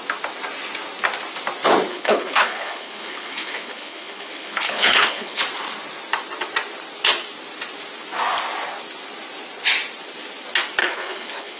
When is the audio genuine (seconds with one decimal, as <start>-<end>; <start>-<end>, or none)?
0.0-1.9; 5.4-10.8